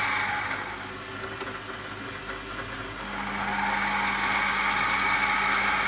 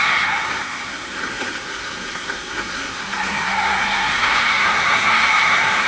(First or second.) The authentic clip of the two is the first